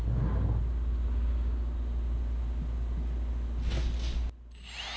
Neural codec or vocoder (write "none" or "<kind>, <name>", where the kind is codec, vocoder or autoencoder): none